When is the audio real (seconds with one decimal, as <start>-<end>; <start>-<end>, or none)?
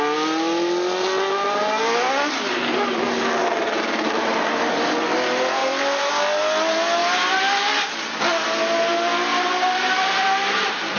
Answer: 0.0-3.4; 4.5-5.6; 6.1-7.0; 7.9-9.3